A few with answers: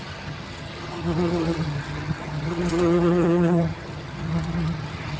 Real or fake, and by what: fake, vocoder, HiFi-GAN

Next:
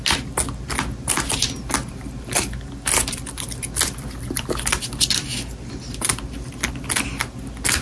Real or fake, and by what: real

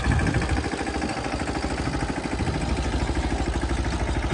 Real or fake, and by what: real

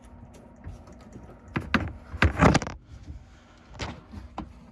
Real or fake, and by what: real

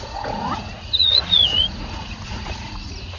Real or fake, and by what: fake, vocoder, Vocos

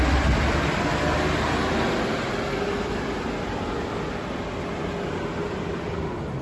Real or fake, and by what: real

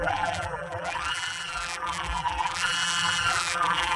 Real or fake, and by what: fake, vocoder, BigVGAN v2